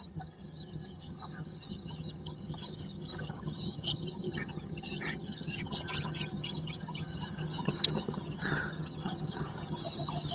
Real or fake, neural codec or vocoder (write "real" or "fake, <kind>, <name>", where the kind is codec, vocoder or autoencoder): fake, vocoder, HiFi-GAN